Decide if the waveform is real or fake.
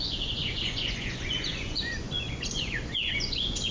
fake